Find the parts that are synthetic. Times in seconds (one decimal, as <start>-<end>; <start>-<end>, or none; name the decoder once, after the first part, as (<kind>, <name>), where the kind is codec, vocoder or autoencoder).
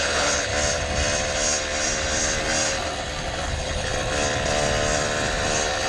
0.0-0.5 (codec, HILCodec); 3.5-3.9